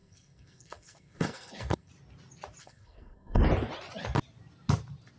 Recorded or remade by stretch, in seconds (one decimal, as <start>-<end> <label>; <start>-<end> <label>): 0.0-1.9 remade; 1.9-2.6 recorded; 2.6-3.4 remade; 3.4-5.2 recorded